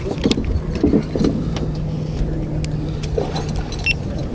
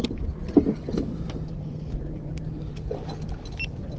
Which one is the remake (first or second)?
second